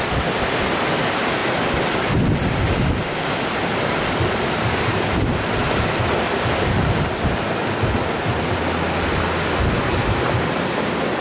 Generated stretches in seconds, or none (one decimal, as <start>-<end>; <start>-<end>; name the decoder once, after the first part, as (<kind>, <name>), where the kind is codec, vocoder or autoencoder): none